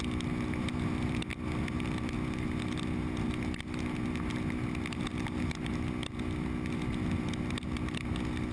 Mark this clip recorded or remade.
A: recorded